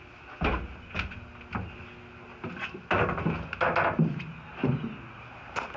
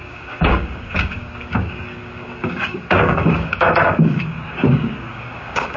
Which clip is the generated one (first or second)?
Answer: second